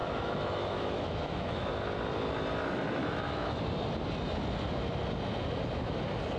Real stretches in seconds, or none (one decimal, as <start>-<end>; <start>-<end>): 1.7-3.0; 3.6-6.4